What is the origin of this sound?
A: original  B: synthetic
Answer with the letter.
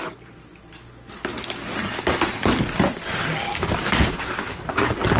A